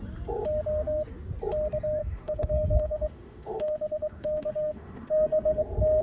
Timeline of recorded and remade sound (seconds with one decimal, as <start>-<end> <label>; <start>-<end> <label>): 0.0-2.0 recorded; 2.0-5.6 remade; 5.6-6.0 recorded